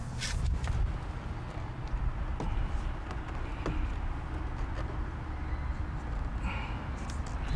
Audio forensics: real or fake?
real